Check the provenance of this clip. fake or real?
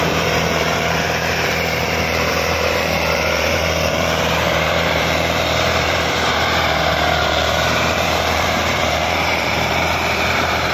fake